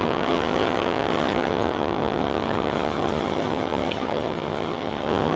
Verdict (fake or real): fake